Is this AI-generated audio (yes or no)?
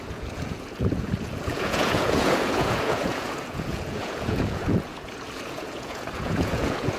yes